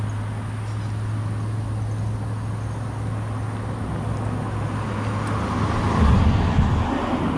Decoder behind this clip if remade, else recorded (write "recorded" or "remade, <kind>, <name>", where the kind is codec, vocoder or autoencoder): recorded